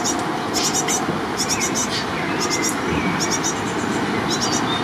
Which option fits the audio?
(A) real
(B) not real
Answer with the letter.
A